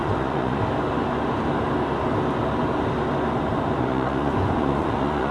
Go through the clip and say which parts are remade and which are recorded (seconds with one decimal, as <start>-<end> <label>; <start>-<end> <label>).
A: 0.0-0.6 remade; 0.6-3.8 recorded; 3.8-5.3 remade